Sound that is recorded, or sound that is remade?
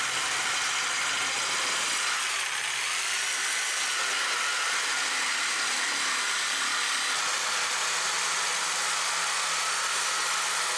recorded